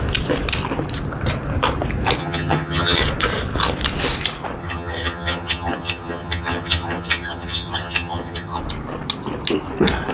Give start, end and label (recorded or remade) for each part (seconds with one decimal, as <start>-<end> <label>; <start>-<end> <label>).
0.0-2.2 recorded; 2.2-3.0 remade; 3.0-4.6 recorded; 4.6-8.6 remade; 8.6-10.1 recorded